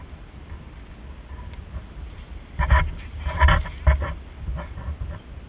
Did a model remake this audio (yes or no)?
no